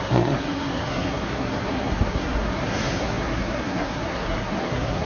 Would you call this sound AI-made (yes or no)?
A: yes